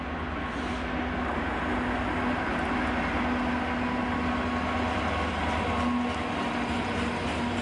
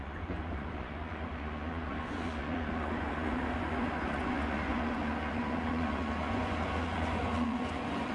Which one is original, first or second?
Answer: first